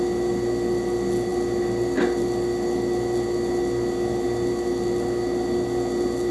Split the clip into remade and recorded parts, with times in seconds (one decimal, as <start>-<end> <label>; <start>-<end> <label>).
0.0-6.3 recorded